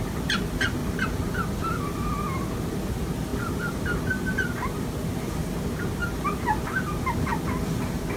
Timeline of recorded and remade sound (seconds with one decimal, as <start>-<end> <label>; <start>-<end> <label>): 0.0-8.2 recorded